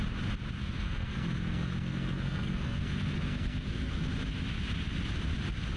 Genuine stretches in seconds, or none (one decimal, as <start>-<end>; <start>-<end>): 0.0-0.6; 4.1-5.8